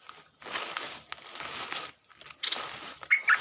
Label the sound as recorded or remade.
recorded